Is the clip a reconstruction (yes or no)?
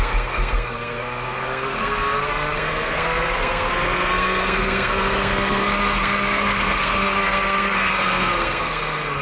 yes